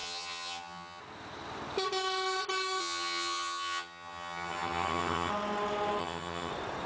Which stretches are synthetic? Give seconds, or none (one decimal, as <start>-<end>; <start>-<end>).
0.0-1.0; 2.8-5.3; 6.0-6.5